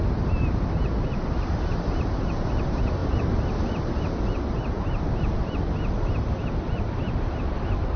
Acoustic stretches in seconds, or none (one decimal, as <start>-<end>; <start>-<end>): 0.0-3.0; 3.5-8.0